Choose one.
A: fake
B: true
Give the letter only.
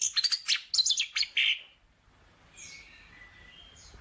B